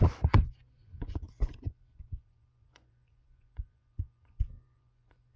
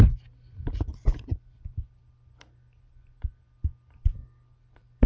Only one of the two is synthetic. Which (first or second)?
first